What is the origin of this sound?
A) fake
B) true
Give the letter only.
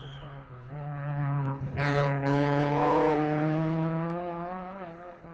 A